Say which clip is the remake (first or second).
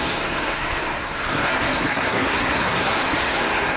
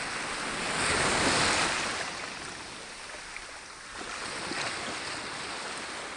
first